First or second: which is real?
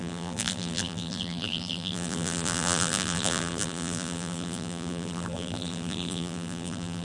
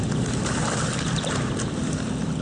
second